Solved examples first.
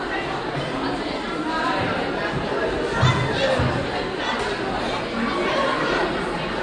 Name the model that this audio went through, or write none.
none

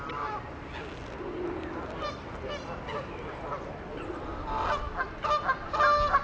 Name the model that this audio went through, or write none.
none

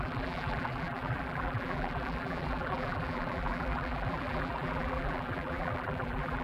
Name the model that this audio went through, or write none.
vocoder, BigVGAN v2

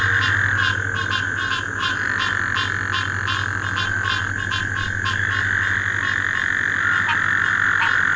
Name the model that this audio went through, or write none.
none